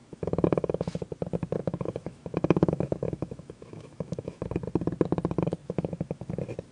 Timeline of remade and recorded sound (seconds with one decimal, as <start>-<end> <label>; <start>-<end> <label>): 0.0-1.0 remade; 1.0-1.6 recorded; 1.6-4.4 remade; 4.4-5.6 recorded; 5.6-6.3 remade; 6.3-6.7 recorded